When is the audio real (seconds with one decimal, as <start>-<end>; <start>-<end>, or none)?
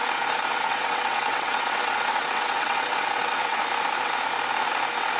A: 0.0-0.5; 3.6-5.2